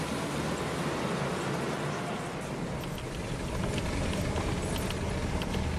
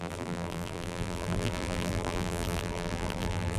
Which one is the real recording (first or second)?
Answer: first